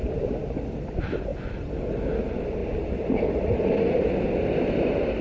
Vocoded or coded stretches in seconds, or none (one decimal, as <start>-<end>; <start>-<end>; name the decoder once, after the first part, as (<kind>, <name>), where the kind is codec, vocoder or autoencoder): 2.6-3.6 (vocoder, BigVGAN v2)